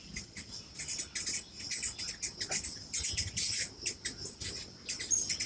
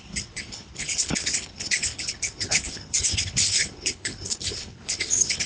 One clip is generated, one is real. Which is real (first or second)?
first